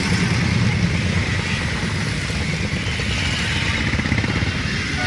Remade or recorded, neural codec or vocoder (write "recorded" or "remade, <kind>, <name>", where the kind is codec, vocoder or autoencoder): recorded